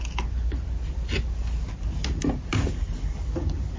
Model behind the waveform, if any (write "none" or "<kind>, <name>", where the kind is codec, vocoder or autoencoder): none